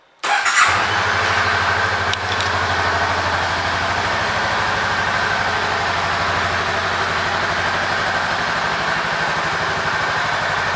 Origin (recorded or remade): recorded